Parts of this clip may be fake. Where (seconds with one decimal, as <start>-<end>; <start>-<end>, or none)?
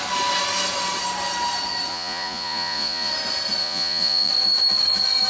1.9-3.1; 3.6-4.3